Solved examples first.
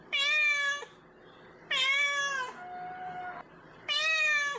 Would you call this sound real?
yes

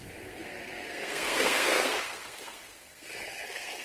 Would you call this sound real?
no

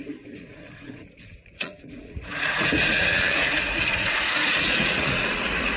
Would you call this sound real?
no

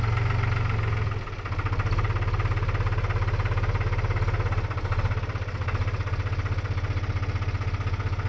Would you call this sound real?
yes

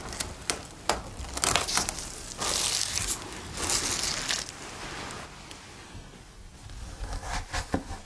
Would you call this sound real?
yes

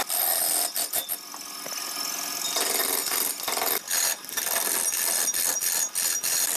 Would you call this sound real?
yes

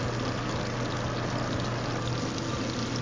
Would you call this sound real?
yes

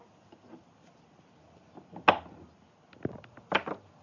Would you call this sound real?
yes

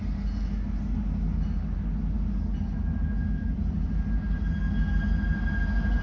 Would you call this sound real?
yes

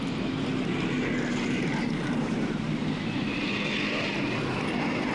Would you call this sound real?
yes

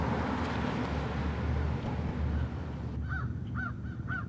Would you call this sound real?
yes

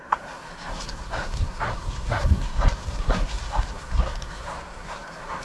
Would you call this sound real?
no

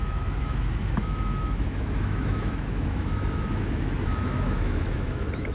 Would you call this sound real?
no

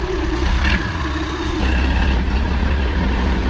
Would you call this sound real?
no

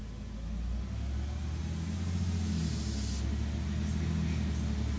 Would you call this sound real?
yes